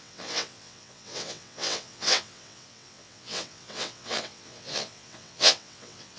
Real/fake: fake